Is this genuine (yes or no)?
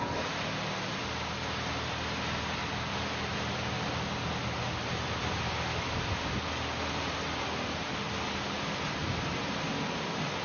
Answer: yes